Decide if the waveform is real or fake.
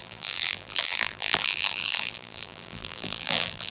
fake